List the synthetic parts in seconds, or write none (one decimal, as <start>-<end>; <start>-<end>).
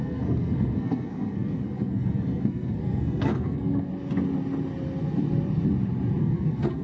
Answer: 0.0-3.9; 6.2-6.8